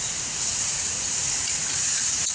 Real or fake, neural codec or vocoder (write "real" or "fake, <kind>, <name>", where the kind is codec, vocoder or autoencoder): fake, vocoder, Vocos